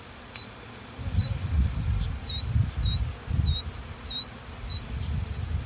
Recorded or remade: remade